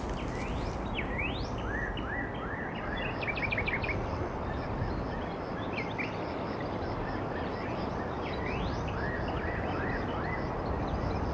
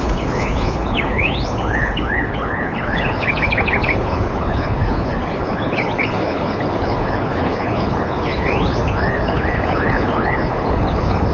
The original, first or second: first